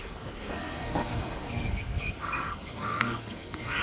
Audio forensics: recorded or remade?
remade